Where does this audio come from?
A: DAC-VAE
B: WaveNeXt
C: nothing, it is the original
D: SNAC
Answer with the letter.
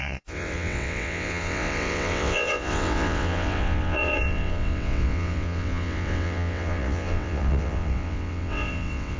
B